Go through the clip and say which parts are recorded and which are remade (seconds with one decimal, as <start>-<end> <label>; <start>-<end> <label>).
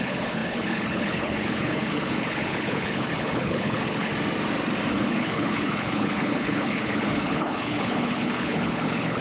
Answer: 0.0-4.1 remade; 4.1-4.9 recorded; 4.9-9.2 remade